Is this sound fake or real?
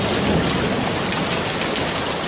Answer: real